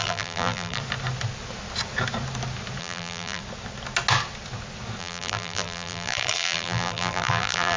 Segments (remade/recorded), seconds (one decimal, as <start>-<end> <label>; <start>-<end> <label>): 0.0-0.8 remade; 0.8-2.8 recorded; 2.8-3.4 remade; 3.4-5.0 recorded; 5.0-7.8 remade